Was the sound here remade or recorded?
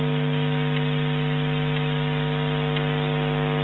recorded